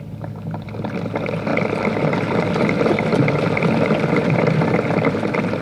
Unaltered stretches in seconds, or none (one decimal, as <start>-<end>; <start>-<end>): 0.0-5.6